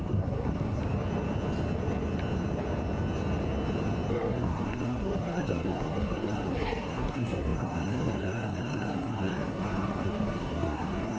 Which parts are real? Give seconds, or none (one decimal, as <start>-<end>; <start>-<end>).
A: 0.8-4.1